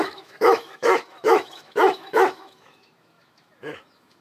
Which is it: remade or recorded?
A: remade